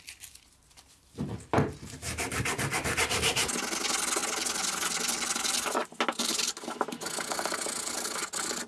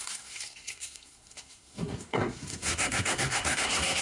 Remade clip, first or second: second